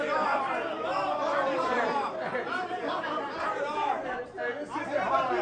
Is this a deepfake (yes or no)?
yes